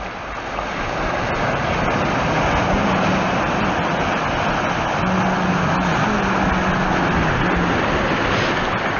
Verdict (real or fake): real